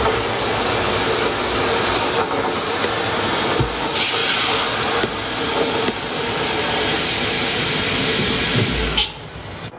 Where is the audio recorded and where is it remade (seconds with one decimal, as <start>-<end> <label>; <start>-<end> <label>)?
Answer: 0.0-9.8 recorded